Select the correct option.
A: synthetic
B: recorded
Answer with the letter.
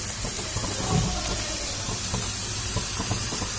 B